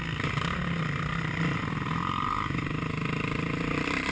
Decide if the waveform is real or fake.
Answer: real